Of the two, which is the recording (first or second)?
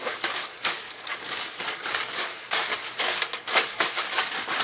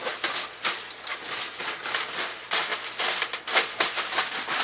second